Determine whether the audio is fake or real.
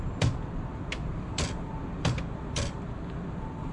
real